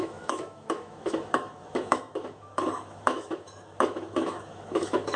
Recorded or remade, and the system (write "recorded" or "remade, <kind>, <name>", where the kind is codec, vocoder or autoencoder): remade, autoencoder, DAC-VAE